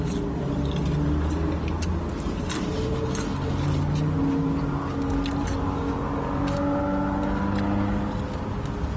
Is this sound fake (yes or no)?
no